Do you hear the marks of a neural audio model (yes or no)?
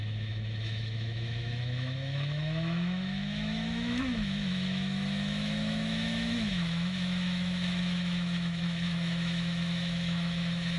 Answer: yes